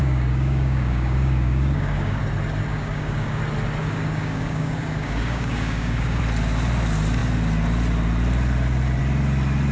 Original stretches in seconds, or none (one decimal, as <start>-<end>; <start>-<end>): 2.2-2.7; 3.4-3.8; 6.2-9.7